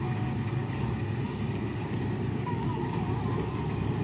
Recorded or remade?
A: remade